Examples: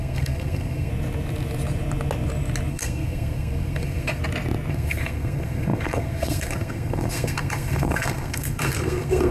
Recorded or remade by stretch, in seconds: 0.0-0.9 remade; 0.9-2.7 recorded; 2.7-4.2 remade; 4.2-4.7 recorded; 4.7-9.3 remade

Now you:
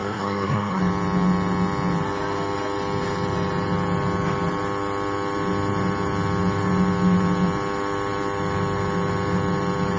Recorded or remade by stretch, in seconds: 0.0-0.8 remade; 0.8-10.0 recorded